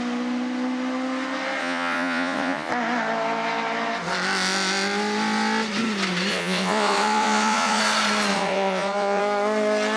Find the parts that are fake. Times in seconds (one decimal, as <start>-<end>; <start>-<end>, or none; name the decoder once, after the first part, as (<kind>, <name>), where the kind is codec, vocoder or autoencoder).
1.6-2.7 (vocoder, Vocos); 6.3-7.8; 8.3-9.2